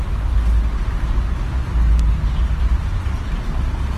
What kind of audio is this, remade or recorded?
recorded